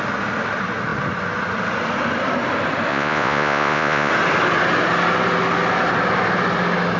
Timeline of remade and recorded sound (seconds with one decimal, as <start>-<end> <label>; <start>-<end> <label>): 0.0-2.9 recorded; 2.9-4.1 remade; 4.1-7.0 recorded